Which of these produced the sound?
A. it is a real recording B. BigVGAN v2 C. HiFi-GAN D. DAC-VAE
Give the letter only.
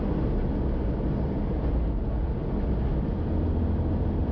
A